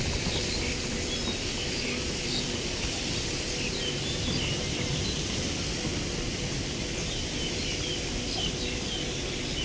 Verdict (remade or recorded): recorded